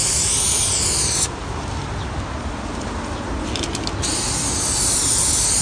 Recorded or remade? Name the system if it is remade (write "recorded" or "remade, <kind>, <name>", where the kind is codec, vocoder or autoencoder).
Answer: recorded